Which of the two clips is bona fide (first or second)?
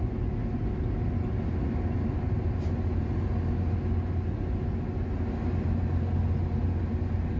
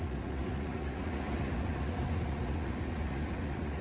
first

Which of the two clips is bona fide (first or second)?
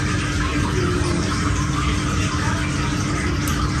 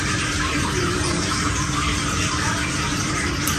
first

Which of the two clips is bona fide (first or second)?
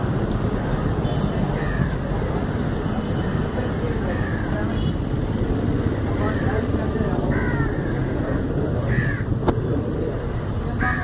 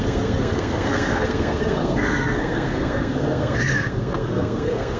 first